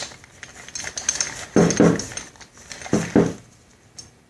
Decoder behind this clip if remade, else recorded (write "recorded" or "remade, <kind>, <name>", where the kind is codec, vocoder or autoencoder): recorded